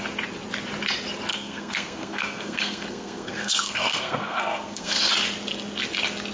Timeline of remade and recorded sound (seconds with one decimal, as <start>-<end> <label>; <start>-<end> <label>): 0.0-1.3 recorded; 1.3-5.1 remade; 5.1-6.3 recorded